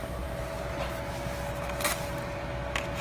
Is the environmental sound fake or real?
real